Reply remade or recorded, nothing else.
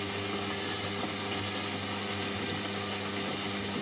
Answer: recorded